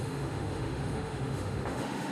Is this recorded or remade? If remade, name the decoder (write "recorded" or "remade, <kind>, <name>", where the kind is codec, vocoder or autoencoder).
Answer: remade, autoencoder, DAC-VAE